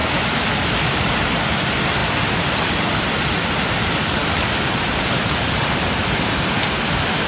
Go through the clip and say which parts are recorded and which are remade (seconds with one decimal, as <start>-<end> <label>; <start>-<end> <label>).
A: 0.0-7.3 recorded